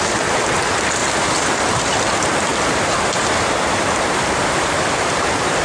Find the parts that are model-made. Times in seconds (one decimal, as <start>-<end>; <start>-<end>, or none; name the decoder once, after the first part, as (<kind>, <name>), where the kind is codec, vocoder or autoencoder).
2.5-5.6 (vocoder, BigVGAN v2)